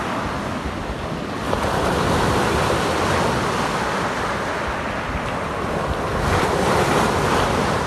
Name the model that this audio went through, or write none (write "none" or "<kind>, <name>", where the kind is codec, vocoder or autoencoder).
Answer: none